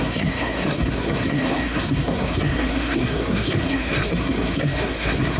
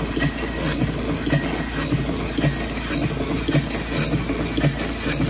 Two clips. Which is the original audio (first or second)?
second